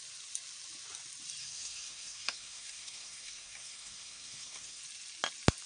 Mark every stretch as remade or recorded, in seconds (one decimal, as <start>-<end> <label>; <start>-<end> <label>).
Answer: 0.0-1.4 recorded; 1.4-4.8 remade; 4.8-5.7 recorded